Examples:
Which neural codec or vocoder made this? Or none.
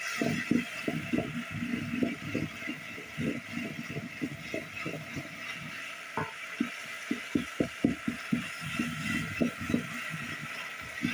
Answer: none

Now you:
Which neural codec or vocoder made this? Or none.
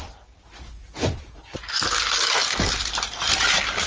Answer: none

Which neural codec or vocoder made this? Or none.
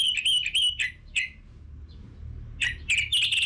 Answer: none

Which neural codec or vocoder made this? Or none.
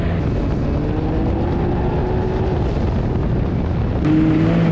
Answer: none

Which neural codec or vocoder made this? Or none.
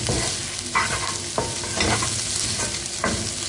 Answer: none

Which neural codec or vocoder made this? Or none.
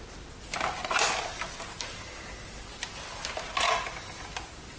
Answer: none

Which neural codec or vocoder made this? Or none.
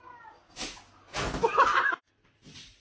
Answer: none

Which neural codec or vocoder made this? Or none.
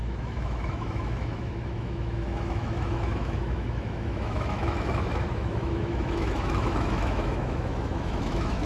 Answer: autoencoder, DAC-VAE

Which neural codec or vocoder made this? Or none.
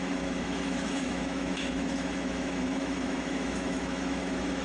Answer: autoencoder, DAC-VAE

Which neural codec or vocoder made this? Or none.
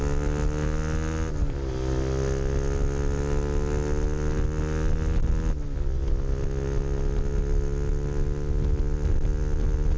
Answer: none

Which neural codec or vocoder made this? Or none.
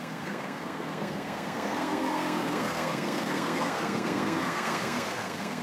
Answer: codec, SNAC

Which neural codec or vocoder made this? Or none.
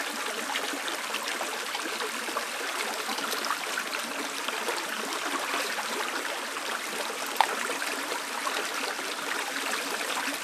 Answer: none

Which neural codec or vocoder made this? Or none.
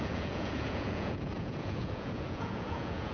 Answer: vocoder, Vocos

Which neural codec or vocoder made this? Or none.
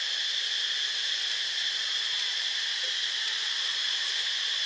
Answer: vocoder, BigVGAN v2